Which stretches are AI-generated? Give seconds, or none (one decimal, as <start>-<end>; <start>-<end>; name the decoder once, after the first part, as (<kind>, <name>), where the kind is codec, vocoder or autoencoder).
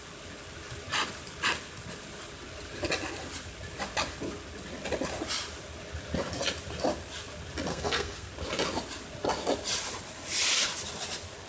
7.7-8.3 (codec, SNAC)